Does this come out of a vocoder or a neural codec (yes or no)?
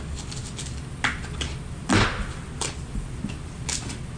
no